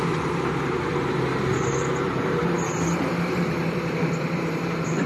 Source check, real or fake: fake